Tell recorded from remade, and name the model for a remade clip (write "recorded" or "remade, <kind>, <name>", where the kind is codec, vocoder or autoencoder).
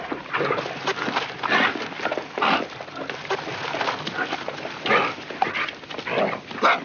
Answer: recorded